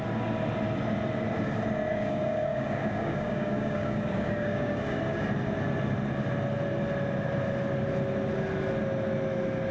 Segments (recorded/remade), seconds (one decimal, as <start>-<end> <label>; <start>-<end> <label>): 0.0-1.9 recorded; 1.9-5.0 remade; 5.0-9.7 recorded